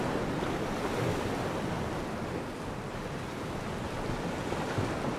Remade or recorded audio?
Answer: recorded